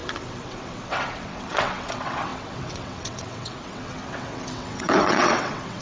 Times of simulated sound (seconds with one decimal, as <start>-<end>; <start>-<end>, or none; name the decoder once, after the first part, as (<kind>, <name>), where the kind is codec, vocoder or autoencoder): 0.0-5.8 (vocoder, WaveNeXt)